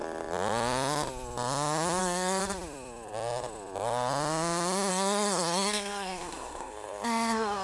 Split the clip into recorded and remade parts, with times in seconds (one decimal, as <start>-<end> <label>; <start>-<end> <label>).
0.0-2.0 recorded; 2.0-2.4 remade; 2.4-4.9 recorded; 4.9-7.6 remade